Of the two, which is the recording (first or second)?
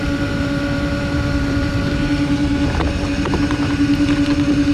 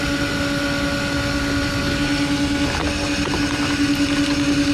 second